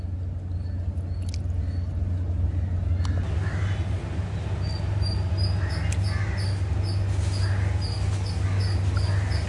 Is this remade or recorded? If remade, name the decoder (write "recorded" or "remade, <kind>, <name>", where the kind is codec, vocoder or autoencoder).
recorded